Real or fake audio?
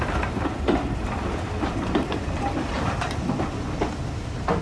real